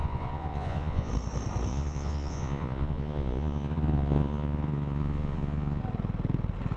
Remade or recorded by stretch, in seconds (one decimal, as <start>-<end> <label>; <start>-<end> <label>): 0.0-1.1 remade; 1.1-1.7 recorded; 1.7-5.8 remade; 5.8-6.8 recorded